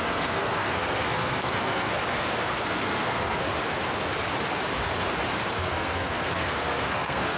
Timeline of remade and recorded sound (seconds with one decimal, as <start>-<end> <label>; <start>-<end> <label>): 0.0-3.5 remade; 3.5-5.5 recorded; 5.5-7.4 remade